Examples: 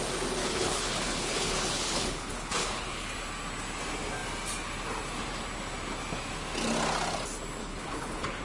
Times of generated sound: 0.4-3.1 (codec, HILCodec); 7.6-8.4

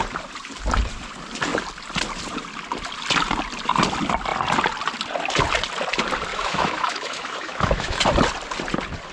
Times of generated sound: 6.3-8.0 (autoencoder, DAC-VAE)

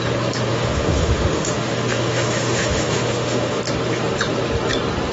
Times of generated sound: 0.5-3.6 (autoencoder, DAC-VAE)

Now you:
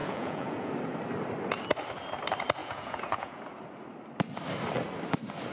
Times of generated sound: 0.0-0.7 (vocoder, Vocos); 2.6-3.4

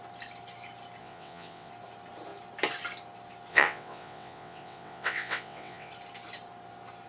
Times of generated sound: 1.0-1.7 (vocoder, WaveNeXt); 3.5-5.9

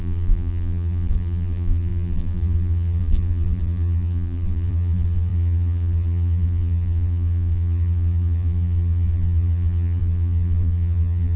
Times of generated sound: 0.0-11.4 (vocoder, BigVGAN v2)

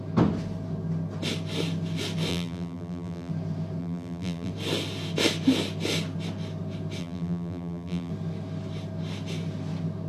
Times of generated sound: 2.3-3.3 (vocoder, BigVGAN v2); 3.8-4.5; 7.0-8.1

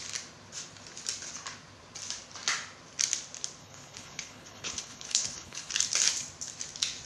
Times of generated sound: 3.6-5.7 (codec, HILCodec)